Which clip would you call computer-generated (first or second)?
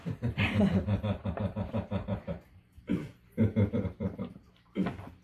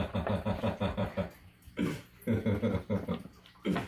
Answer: first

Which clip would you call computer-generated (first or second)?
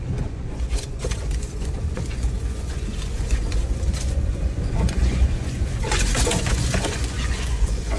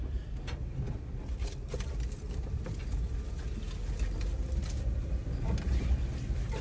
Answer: first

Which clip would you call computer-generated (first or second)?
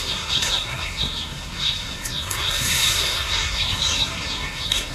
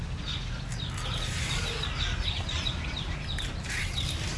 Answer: first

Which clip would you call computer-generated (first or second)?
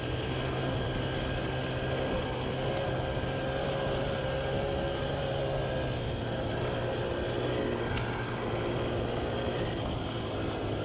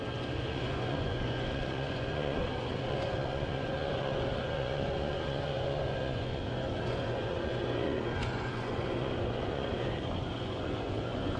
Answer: second